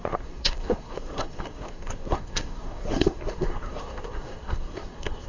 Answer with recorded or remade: remade